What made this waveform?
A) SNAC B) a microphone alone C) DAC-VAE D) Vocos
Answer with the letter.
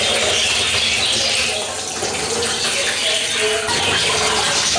B